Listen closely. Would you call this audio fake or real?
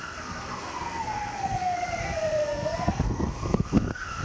fake